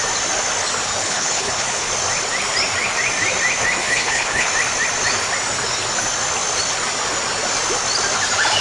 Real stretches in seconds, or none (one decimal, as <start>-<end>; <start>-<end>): 0.0-1.0; 1.9-3.8; 4.5-8.6